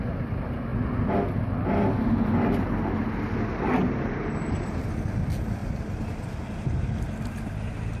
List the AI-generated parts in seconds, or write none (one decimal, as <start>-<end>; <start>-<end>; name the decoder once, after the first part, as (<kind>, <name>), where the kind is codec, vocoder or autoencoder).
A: 3.8-4.8 (vocoder, BigVGAN v2)